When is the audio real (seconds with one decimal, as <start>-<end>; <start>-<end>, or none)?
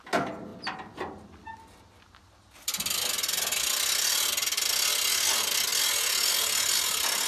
0.0-7.3